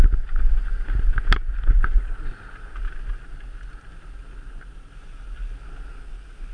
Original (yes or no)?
yes